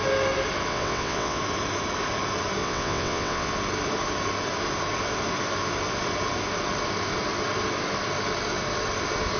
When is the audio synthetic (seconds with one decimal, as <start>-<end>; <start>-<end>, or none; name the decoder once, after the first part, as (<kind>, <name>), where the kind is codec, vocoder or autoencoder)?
0.7-1.4 (vocoder, WaveNeXt); 2.6-3.5